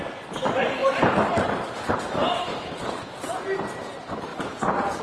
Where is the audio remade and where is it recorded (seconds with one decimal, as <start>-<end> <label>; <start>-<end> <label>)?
0.0-4.3 recorded; 4.3-5.0 remade